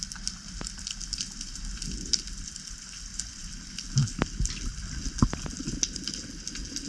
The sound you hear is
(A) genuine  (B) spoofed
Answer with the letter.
A